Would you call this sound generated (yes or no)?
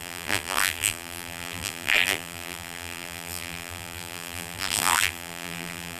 yes